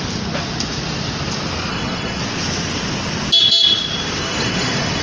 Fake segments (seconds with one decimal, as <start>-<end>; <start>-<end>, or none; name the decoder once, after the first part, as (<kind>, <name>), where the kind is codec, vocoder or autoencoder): 1.7-2.2 (codec, SNAC); 4.2-5.0